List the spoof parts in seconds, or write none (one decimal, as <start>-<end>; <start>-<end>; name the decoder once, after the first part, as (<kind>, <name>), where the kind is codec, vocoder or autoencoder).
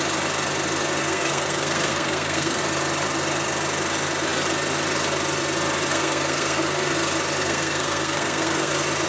1.0-2.6 (codec, SNAC); 5.9-6.9; 7.4-8.7